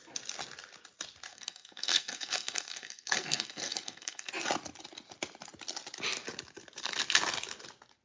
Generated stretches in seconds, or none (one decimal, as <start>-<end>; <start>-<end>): 1.3-4.3